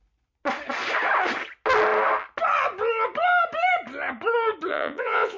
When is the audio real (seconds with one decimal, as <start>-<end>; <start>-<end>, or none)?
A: 0.0-4.7